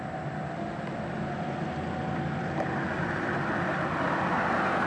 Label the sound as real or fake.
real